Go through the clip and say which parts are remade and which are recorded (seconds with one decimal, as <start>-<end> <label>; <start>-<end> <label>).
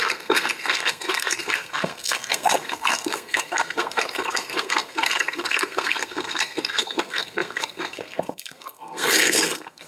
0.0-9.9 remade